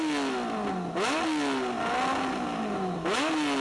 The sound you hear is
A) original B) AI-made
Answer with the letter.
A